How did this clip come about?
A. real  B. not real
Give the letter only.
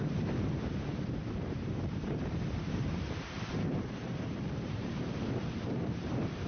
B